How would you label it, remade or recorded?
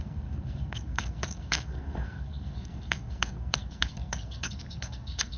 remade